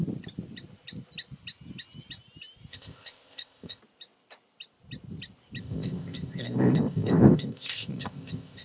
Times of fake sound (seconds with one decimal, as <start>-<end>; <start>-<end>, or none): 2.7-3.8; 5.6-8.6